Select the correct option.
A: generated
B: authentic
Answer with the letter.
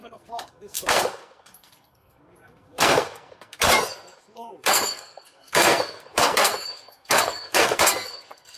A